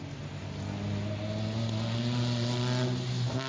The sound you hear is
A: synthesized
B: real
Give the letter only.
B